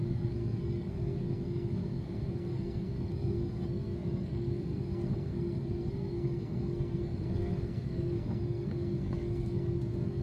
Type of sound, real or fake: fake